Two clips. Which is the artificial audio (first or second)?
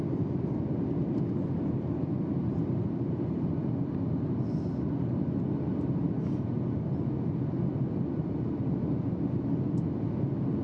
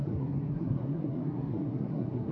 second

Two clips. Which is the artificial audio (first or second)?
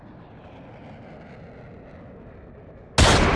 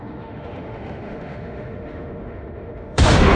second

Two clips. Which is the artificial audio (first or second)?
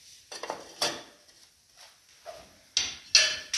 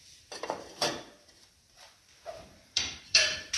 second